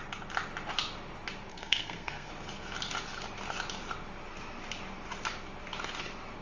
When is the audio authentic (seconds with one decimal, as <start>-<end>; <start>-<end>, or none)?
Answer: 0.0-1.5; 2.3-6.4